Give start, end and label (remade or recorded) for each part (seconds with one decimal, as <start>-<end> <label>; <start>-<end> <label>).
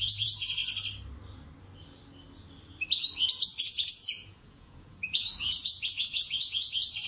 0.0-0.6 remade; 0.6-3.6 recorded; 3.6-7.1 remade